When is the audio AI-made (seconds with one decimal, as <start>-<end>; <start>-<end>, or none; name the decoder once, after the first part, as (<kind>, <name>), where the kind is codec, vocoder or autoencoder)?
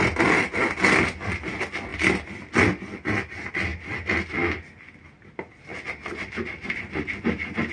none